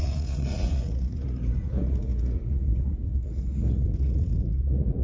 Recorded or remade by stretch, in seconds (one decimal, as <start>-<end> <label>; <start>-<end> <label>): 0.0-5.0 remade